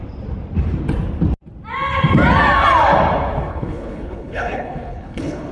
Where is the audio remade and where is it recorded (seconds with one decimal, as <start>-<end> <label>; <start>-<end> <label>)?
0.0-3.5 recorded; 3.5-5.5 remade